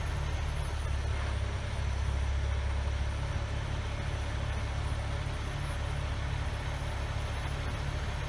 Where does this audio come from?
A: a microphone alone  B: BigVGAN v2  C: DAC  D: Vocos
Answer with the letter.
A